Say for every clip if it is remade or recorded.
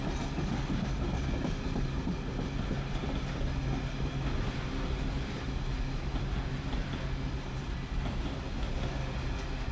recorded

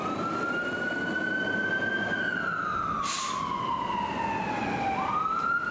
recorded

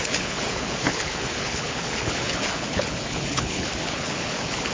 remade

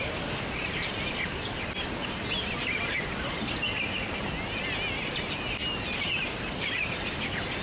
recorded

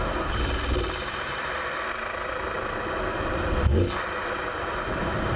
recorded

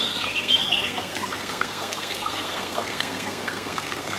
remade